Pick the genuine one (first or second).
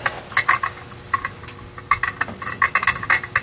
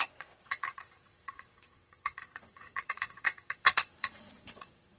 first